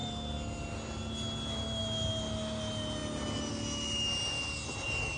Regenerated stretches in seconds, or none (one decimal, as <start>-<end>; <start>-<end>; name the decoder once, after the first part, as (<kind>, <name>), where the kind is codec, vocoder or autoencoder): none